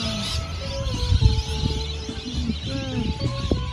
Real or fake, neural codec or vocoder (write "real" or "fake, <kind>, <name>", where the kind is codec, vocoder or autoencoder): real